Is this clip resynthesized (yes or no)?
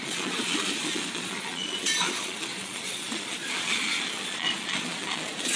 yes